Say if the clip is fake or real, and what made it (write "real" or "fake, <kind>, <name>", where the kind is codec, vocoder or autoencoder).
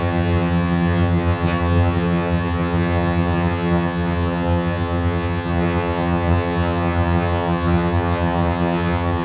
fake, vocoder, HiFi-GAN